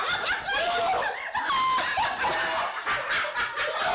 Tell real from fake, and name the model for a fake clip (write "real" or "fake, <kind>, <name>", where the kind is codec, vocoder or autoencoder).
real